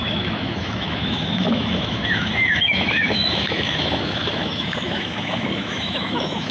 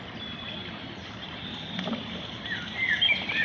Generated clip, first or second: first